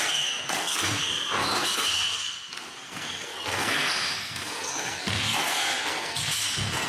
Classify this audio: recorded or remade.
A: remade